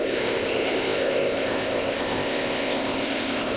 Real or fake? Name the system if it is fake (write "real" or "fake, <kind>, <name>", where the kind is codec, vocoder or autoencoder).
fake, codec, ZipCodec